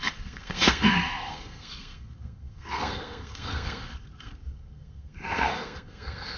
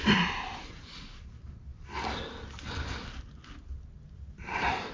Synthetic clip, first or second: first